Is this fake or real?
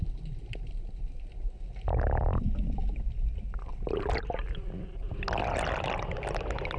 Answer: real